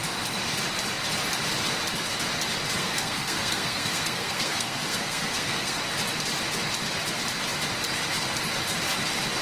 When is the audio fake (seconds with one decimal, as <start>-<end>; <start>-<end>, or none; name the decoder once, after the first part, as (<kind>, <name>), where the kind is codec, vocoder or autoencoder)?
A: 2.8-5.8 (codec, SNAC)